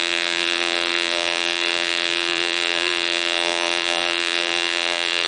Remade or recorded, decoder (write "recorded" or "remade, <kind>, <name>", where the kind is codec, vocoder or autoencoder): remade, vocoder, BigVGAN v2